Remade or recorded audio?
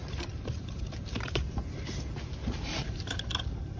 remade